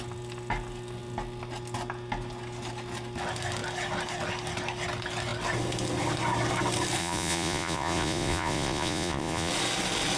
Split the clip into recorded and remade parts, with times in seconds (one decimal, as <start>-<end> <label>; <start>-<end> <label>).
0.0-7.0 recorded; 7.0-9.5 remade; 9.5-10.2 recorded